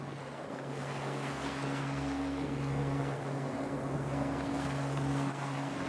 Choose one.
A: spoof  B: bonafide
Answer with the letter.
A